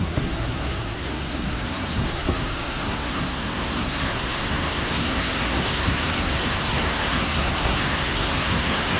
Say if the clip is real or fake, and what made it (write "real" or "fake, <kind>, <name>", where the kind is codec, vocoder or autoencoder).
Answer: fake, codec, SNAC